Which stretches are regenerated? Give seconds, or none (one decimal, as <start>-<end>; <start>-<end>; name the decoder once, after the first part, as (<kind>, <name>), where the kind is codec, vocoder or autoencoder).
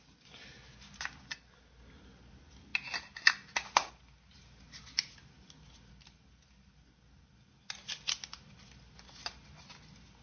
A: none